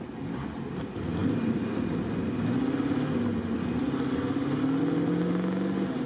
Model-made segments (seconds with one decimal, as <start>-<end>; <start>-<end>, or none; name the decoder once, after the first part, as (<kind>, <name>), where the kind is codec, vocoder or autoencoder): none